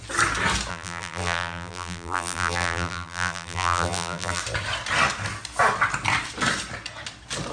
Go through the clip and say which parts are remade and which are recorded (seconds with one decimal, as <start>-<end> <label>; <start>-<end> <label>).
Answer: 0.0-0.7 recorded; 0.7-4.4 remade; 4.4-7.5 recorded